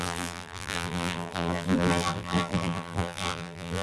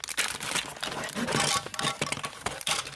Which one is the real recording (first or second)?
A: second